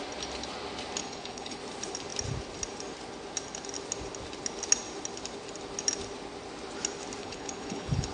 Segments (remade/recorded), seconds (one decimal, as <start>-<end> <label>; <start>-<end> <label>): 0.0-1.0 recorded; 1.0-1.6 remade; 1.6-7.2 recorded; 7.2-8.1 remade